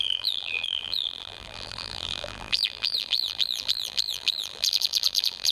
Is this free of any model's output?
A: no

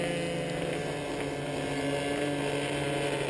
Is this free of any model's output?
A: yes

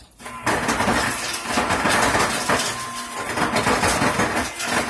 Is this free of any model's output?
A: yes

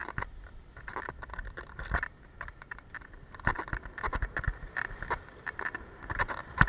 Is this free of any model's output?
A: no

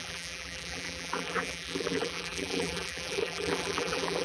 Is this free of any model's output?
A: no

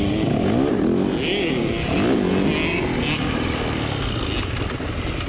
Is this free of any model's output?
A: yes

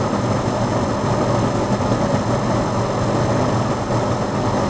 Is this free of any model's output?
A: yes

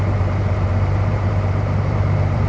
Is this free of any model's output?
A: no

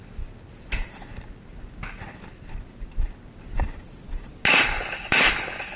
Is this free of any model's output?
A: yes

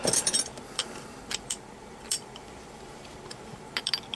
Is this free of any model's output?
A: no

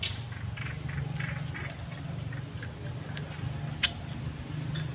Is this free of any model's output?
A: yes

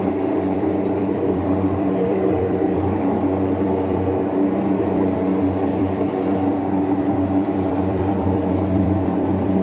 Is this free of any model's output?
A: no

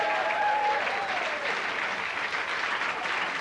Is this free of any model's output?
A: no